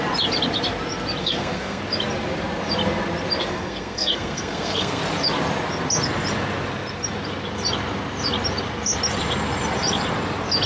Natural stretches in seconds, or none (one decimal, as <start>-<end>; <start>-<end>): 0.0-1.2; 1.8-3.4; 5.0-10.7